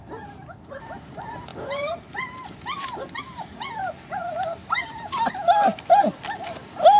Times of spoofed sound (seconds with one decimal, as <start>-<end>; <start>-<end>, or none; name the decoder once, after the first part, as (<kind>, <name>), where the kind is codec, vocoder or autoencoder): none